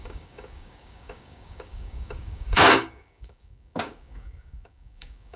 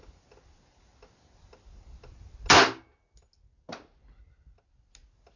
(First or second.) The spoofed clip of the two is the first